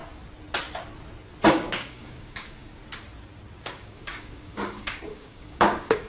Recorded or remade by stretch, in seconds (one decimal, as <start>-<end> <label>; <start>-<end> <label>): 0.0-1.5 recorded; 1.5-2.8 remade; 2.8-3.6 recorded; 3.6-6.1 remade